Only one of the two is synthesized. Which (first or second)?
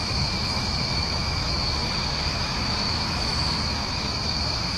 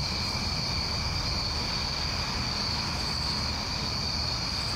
first